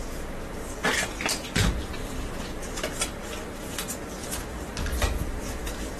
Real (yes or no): no